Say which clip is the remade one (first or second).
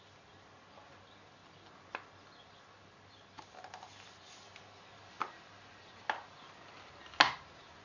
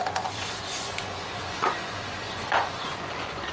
second